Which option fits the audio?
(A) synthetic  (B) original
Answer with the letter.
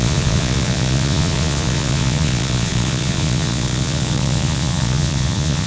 A